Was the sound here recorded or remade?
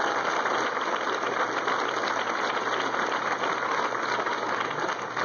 recorded